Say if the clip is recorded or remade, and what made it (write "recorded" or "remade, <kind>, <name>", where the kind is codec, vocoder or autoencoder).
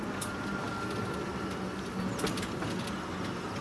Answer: recorded